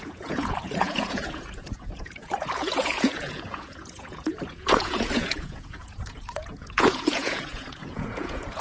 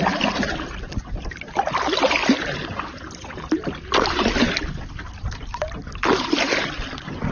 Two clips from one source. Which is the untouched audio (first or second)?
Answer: second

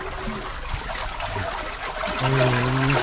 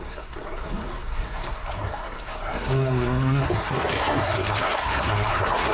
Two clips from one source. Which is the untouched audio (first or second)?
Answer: first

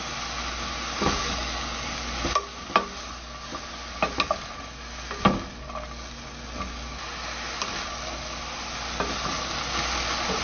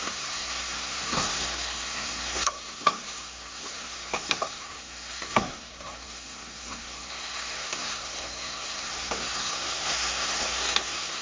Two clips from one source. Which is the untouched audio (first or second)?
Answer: first